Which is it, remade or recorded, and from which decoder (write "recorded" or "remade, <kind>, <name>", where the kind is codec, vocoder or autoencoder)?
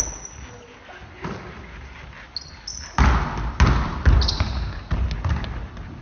recorded